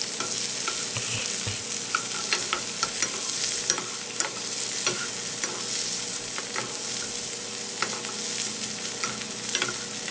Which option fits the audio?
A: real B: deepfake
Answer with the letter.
A